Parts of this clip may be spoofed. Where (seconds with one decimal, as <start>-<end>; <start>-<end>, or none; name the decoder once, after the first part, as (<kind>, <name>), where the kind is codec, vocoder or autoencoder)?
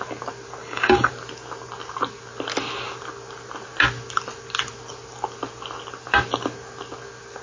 0.6-1.1 (codec, DAC)